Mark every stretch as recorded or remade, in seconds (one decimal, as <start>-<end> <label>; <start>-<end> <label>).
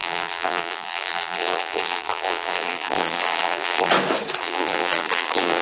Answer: 0.0-3.9 remade; 3.9-4.4 recorded; 4.4-5.6 remade